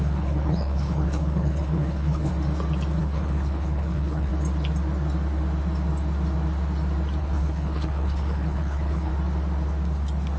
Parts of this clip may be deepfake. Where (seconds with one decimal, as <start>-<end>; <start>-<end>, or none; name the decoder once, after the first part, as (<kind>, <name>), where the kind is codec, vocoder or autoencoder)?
0.0-2.3 (codec, HILCodec); 3.0-4.3; 7.2-9.1